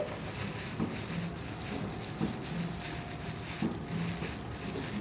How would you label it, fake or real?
real